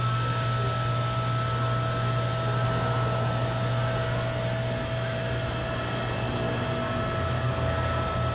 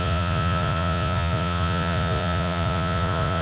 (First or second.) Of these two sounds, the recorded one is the first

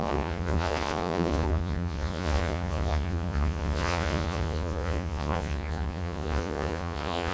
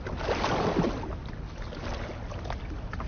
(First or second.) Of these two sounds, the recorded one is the second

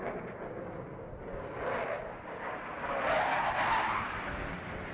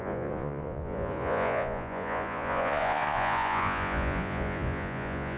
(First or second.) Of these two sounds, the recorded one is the first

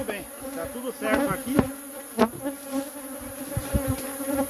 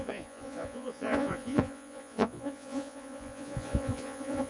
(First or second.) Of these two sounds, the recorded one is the first